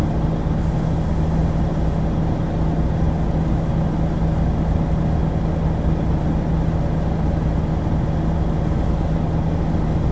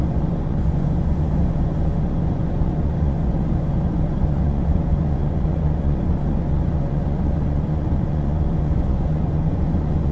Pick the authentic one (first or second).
first